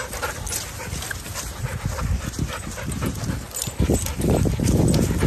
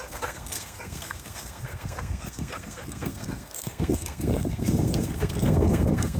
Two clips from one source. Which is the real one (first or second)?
first